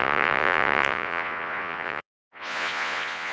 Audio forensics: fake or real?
fake